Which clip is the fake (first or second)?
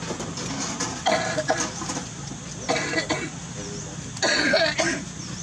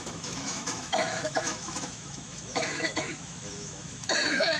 second